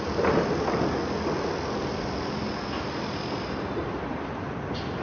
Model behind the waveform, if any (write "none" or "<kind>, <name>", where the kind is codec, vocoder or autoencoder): none